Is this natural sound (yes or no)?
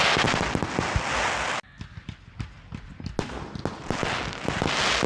yes